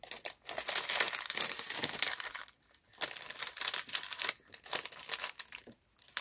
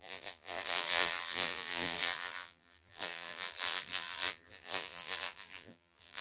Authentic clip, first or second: first